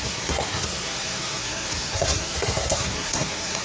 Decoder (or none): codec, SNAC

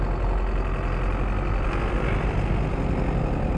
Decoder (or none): none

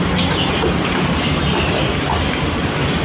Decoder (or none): none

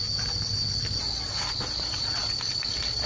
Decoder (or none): none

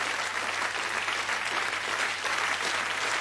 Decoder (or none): none